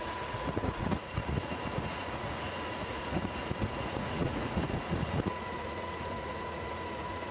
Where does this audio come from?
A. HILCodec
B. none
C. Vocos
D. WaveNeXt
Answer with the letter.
C